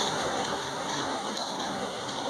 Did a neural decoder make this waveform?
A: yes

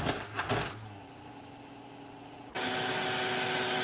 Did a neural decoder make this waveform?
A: no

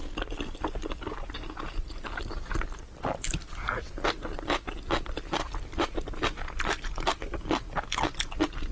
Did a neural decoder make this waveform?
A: no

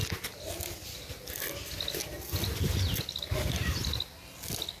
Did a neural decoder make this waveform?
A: no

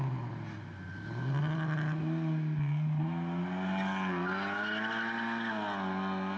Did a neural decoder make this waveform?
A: no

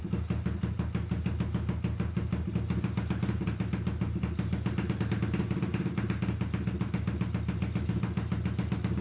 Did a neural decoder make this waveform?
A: no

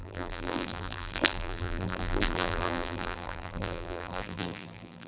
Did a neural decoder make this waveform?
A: yes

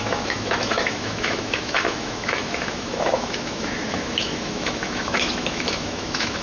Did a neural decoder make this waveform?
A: yes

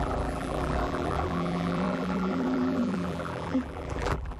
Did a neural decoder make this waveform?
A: yes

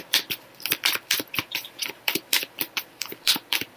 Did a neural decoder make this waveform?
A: yes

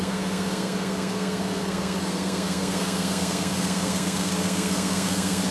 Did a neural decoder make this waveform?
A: yes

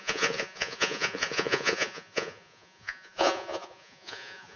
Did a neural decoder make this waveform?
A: yes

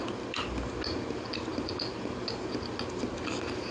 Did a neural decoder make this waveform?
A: no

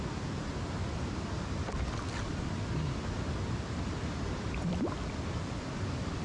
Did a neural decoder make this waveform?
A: no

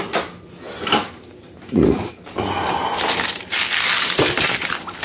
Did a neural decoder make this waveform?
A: no